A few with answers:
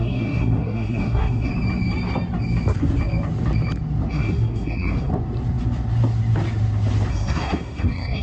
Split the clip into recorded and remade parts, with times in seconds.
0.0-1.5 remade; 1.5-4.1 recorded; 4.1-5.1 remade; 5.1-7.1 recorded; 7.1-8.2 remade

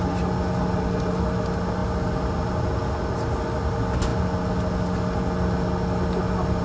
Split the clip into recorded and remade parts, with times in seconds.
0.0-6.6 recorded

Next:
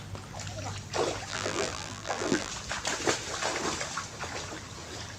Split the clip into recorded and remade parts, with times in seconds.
0.0-1.3 recorded; 1.3-2.5 remade; 2.5-5.2 recorded

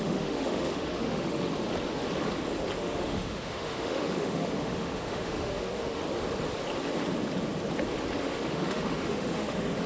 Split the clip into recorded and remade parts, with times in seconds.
0.0-1.5 remade; 1.5-2.8 recorded; 2.8-6.0 remade; 6.0-8.2 recorded; 8.2-9.9 remade

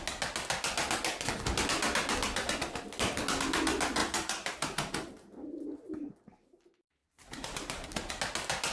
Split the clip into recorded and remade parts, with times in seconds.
0.0-4.0 recorded; 4.0-5.3 remade; 5.3-7.0 recorded; 7.0-8.1 remade; 8.1-8.7 recorded

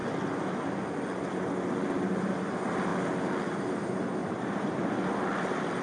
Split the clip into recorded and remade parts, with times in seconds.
0.0-4.2 recorded; 4.2-5.2 remade; 5.2-5.8 recorded

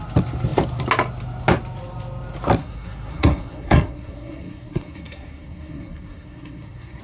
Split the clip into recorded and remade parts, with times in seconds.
0.0-2.6 recorded; 2.6-7.0 remade

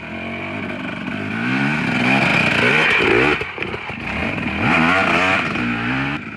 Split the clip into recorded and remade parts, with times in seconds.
0.0-4.2 recorded; 4.2-4.8 remade; 4.8-6.4 recorded